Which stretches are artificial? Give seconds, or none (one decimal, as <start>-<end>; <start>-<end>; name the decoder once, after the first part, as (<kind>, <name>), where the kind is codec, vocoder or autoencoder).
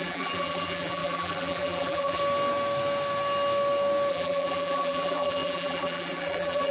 0.0-2.2 (vocoder, BigVGAN v2); 4.1-6.7